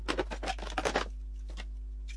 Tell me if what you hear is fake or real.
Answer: real